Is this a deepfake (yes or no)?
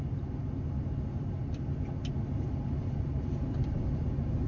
no